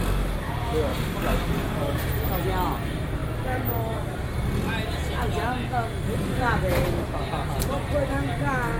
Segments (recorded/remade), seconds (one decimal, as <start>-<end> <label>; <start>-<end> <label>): 0.0-0.9 recorded; 0.9-2.3 remade; 2.3-8.8 recorded